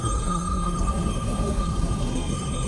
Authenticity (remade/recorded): remade